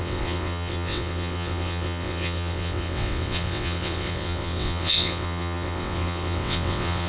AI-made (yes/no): yes